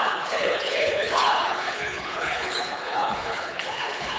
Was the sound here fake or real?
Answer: fake